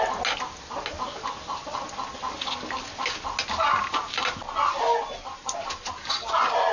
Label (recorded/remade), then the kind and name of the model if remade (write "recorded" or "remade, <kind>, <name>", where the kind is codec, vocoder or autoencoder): recorded